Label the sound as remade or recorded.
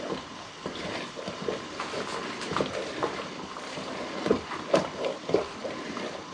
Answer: remade